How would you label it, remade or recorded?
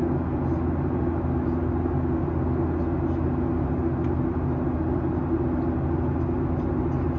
recorded